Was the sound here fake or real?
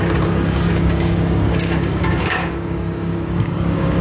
fake